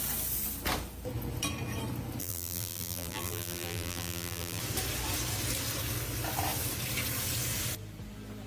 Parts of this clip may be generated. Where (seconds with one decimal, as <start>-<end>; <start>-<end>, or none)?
2.2-4.6